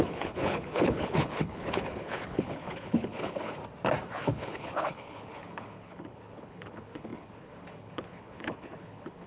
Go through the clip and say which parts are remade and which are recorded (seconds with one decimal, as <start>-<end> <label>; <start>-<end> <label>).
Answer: 0.0-3.6 remade; 3.6-4.1 recorded; 4.1-9.3 remade